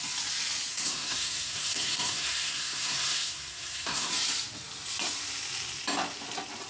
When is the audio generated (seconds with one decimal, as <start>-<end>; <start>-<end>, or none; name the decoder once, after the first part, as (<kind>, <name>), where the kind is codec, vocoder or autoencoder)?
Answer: 0.7-4.1 (codec, SNAC)